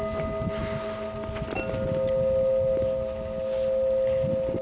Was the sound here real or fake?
real